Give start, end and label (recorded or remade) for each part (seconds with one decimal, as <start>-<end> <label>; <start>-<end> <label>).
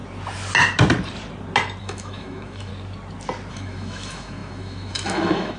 0.0-1.8 recorded; 1.8-2.7 remade; 2.7-3.5 recorded; 3.5-5.6 remade